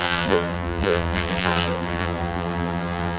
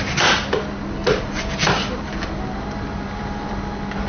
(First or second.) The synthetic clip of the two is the first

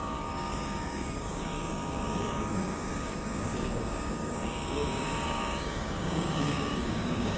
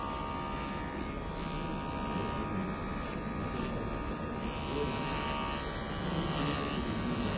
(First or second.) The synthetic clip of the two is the first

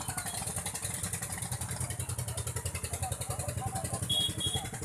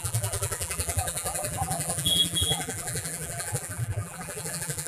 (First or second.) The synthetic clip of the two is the second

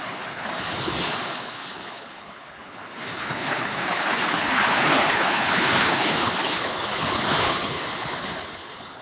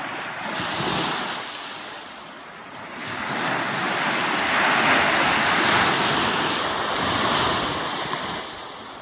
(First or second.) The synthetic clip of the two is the first